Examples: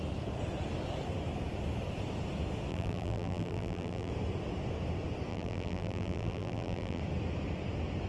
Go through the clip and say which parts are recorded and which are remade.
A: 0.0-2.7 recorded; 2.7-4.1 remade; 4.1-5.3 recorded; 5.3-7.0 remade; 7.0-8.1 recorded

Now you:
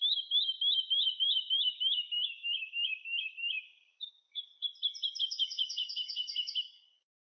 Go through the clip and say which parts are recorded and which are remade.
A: 0.0-4.5 remade; 4.5-5.2 recorded; 5.2-7.3 remade

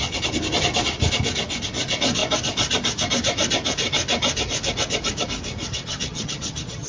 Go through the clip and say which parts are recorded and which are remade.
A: 0.0-5.7 recorded; 5.7-6.9 remade

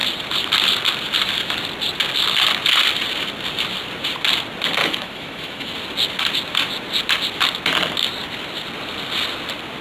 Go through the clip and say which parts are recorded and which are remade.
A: 0.0-4.8 recorded; 4.8-5.7 remade; 5.7-9.8 recorded

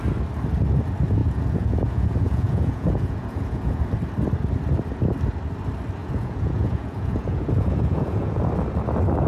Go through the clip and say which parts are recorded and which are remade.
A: 0.0-1.2 recorded; 1.2-3.8 remade; 3.8-6.0 recorded; 6.0-8.4 remade; 8.4-9.3 recorded